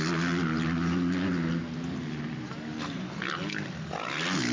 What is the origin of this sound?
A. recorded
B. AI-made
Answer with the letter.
A